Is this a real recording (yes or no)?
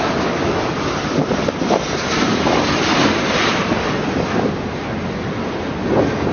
yes